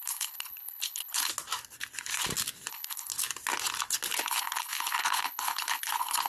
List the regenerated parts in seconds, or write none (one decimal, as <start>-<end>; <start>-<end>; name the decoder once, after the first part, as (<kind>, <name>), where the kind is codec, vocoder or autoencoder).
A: 0.0-1.3 (codec, HILCodec); 2.7-3.1; 4.2-6.3